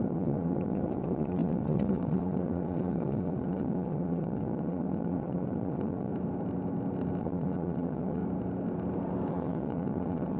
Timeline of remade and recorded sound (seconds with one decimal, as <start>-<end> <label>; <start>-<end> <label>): 0.0-6.1 remade; 6.1-7.2 recorded; 7.2-8.2 remade; 8.2-9.3 recorded; 9.3-10.4 remade